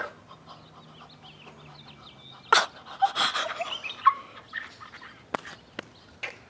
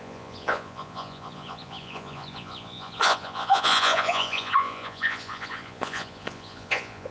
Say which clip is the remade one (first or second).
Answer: second